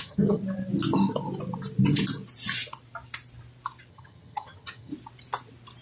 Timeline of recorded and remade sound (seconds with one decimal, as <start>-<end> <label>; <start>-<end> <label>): 0.0-0.4 remade; 0.4-3.9 recorded; 3.9-4.9 remade; 4.9-5.8 recorded